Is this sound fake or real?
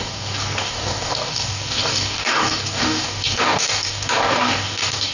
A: fake